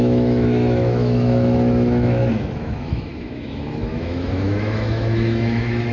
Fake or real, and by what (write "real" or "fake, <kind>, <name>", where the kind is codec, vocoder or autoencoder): fake, autoencoder, DAC-VAE